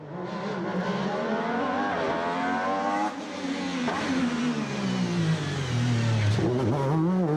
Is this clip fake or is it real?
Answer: real